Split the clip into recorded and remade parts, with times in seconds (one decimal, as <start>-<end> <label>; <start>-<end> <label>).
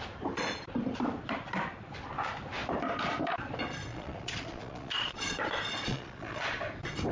0.0-3.9 recorded; 3.9-5.2 remade; 5.2-5.9 recorded; 5.9-6.5 remade; 6.5-7.1 recorded